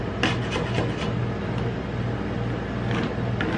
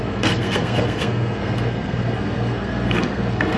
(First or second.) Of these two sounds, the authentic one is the first